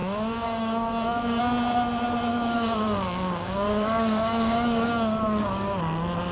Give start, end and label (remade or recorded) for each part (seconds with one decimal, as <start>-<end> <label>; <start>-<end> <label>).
0.0-1.4 remade; 1.4-2.3 recorded; 2.3-5.8 remade; 5.8-6.3 recorded